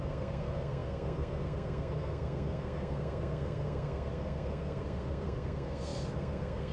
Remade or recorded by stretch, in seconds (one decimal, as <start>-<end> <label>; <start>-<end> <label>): 0.0-6.7 remade